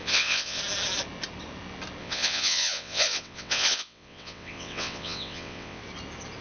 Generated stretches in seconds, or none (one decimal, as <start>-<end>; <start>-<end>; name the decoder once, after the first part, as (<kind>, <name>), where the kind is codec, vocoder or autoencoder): 0.0-0.6 (vocoder, WaveNeXt); 2.0-5.8